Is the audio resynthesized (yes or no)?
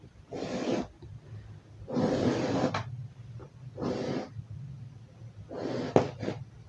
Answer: no